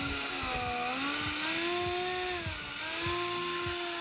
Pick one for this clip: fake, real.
real